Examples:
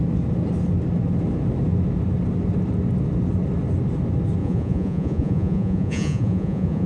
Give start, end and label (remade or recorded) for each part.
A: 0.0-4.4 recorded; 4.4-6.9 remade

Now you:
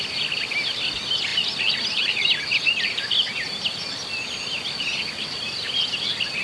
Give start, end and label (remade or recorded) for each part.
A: 0.0-6.4 recorded

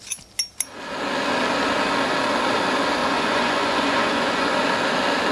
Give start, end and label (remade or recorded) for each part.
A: 0.0-3.0 recorded; 3.0-4.6 remade; 4.6-5.3 recorded

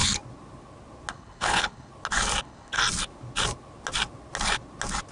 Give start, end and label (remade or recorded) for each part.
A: 0.0-1.1 recorded; 1.1-1.9 remade; 1.9-2.4 recorded; 2.4-2.8 remade; 2.8-5.1 recorded

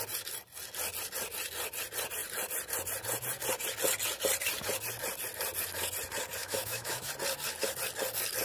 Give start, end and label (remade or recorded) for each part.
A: 0.0-6.4 recorded; 6.4-7.1 remade; 7.1-8.4 recorded